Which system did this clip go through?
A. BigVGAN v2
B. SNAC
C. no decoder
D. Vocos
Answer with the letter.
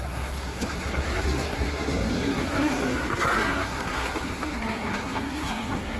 B